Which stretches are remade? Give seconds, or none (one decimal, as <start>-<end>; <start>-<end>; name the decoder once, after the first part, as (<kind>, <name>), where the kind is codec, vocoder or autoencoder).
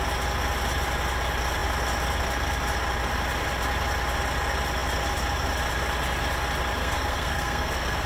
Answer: 6.8-8.1 (codec, SNAC)